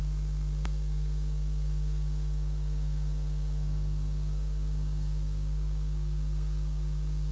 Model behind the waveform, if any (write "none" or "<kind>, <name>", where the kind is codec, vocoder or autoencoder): codec, SNAC